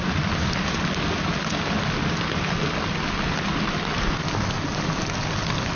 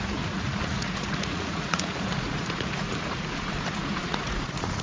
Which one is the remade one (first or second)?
second